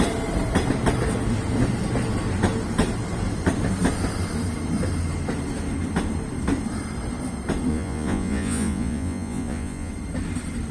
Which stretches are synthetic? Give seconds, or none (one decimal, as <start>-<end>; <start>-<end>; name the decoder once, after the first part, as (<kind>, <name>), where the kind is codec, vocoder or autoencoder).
7.7-9.9 (vocoder, Vocos)